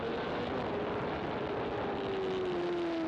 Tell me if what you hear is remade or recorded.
recorded